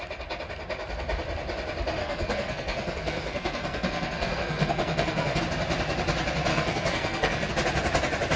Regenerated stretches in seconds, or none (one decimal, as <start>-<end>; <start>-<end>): 2.0-5.4; 6.5-7.5